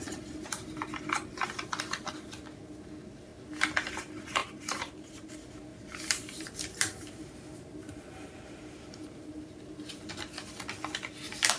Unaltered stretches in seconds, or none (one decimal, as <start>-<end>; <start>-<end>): 0.0-4.4; 5.3-5.7; 10.1-11.6